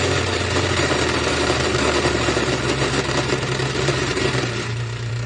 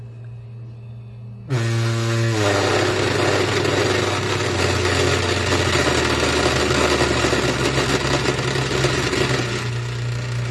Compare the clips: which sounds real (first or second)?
second